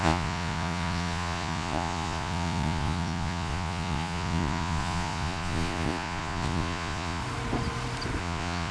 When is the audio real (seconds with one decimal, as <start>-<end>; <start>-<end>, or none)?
7.2-8.2